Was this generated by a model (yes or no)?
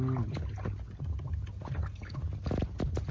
no